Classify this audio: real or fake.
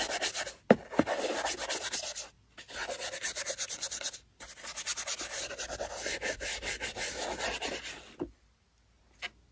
real